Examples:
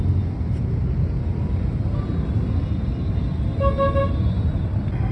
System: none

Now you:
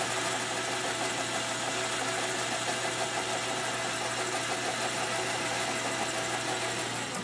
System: none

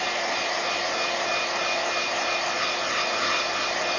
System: none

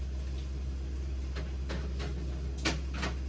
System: none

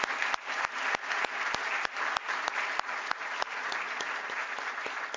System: none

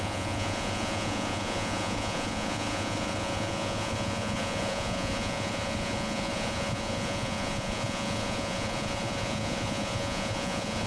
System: vocoder, Vocos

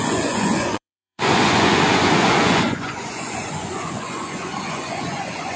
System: vocoder, Vocos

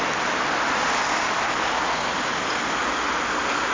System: none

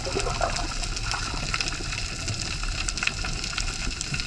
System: none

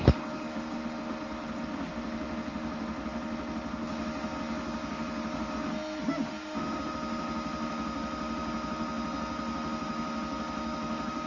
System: none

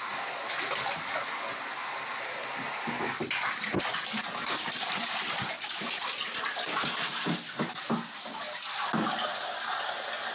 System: none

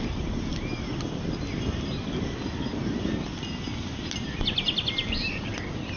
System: none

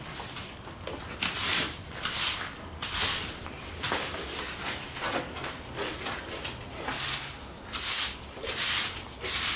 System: none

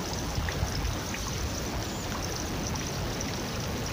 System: none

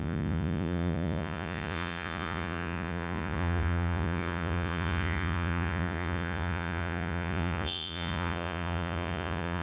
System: vocoder, Vocos